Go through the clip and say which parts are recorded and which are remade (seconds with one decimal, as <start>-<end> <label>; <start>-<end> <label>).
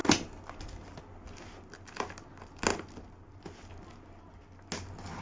0.0-5.2 recorded